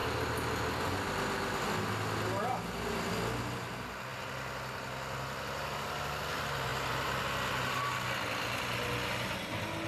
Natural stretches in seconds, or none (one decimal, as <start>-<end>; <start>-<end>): 0.0-6.7; 7.2-9.9